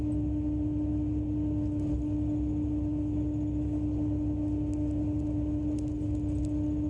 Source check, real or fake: real